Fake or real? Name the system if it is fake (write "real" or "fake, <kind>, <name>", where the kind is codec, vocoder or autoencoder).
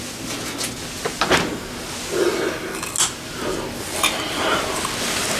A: real